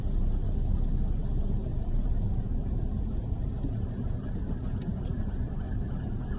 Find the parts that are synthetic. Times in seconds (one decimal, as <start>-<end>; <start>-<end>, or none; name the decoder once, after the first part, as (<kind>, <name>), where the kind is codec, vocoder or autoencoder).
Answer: 1.2-4.3 (vocoder, BigVGAN v2)